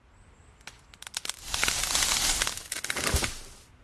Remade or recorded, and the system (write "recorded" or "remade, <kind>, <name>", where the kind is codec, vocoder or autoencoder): recorded